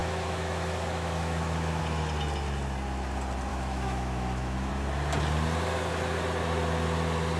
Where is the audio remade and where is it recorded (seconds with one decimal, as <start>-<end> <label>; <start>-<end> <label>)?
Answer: 0.0-1.8 remade; 1.8-3.5 recorded; 3.5-4.7 remade; 4.7-7.4 recorded